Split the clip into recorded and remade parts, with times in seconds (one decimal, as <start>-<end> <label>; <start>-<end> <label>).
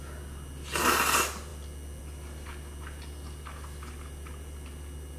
0.0-5.2 recorded